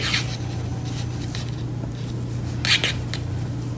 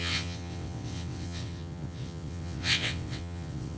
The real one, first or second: first